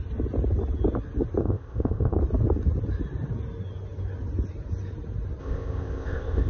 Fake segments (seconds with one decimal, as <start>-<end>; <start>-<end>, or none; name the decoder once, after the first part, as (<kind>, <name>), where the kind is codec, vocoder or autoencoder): 1.4-2.2 (codec, ZipCodec); 5.4-6.5